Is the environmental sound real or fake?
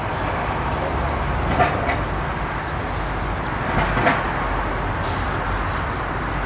real